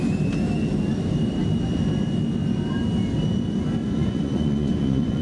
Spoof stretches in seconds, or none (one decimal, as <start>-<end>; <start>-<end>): 3.8-5.2

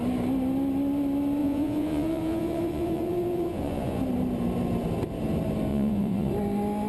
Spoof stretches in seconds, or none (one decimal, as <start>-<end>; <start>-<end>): 1.4-4.0; 5.7-6.3

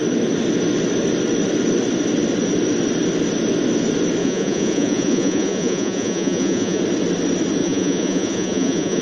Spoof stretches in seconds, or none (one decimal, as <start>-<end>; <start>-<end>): 4.2-6.8; 7.6-9.0

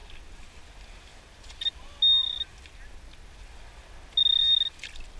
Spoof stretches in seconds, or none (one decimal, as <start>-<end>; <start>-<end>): none

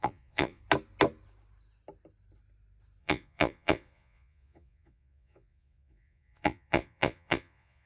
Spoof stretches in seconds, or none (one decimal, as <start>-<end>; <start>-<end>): 0.0-0.6; 3.0-7.9

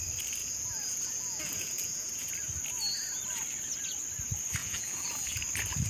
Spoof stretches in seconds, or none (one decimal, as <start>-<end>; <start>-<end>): 0.4-2.3; 4.6-5.4

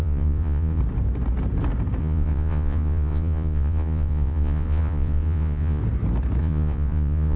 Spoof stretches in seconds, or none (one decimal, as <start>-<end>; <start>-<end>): 0.0-0.8; 2.0-5.8; 6.4-7.4